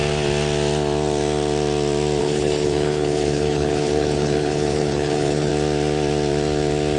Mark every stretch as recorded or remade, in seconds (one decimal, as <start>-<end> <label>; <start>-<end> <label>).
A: 0.0-2.2 recorded; 2.2-5.5 remade; 5.5-7.0 recorded